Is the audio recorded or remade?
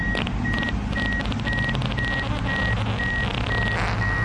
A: recorded